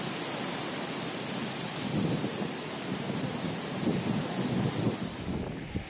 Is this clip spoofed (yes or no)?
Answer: no